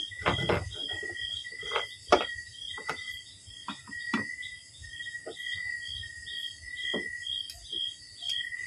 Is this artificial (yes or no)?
no